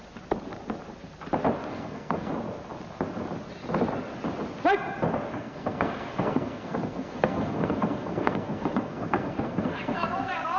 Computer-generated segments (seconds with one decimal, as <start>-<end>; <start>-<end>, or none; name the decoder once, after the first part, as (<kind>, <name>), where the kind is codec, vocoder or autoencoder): 1.7-2.3 (codec, SNAC); 5.3-10.6